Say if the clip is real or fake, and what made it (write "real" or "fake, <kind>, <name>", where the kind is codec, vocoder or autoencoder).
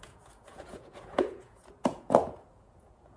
fake, vocoder, Vocos